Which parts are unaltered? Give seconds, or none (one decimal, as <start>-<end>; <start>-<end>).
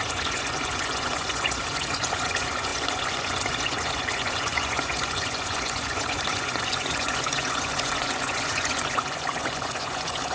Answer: none